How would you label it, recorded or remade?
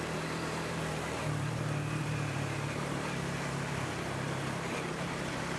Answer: remade